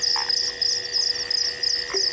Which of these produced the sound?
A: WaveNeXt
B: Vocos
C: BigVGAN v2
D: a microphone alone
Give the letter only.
D